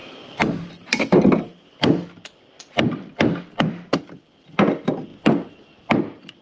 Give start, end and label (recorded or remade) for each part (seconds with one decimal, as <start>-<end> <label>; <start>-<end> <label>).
0.0-1.7 remade; 1.7-5.1 recorded; 5.1-5.9 remade; 5.9-6.4 recorded